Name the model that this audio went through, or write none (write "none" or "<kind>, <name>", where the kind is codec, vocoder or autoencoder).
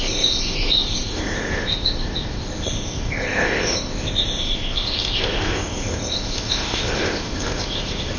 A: codec, ZipCodec